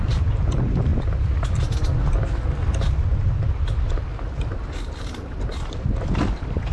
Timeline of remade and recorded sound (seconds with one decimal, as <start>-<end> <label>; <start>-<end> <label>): 0.0-0.9 remade; 0.9-4.4 recorded; 4.4-6.7 remade